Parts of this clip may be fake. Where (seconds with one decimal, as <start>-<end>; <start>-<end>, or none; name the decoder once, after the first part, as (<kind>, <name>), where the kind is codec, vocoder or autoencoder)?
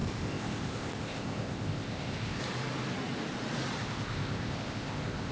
0.0-2.4 (codec, ZipCodec); 3.8-5.3